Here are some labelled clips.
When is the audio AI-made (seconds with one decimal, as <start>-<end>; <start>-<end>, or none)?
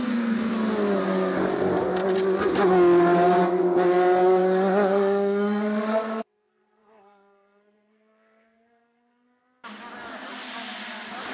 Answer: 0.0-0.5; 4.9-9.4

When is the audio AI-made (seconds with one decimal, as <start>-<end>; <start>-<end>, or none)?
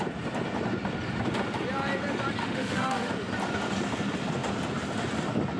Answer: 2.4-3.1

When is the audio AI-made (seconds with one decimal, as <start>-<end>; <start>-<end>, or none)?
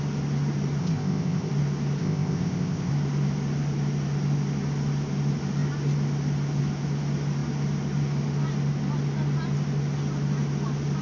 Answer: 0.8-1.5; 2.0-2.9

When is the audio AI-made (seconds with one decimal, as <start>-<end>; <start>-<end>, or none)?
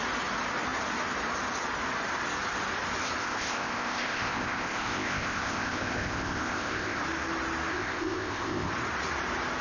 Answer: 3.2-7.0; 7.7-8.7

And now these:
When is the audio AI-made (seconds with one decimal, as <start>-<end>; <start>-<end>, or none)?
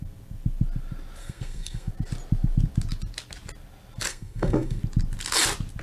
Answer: 1.2-1.9; 4.1-4.8